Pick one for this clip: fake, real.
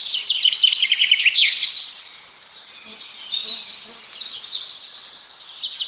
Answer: real